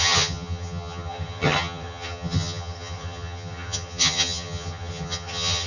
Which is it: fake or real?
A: fake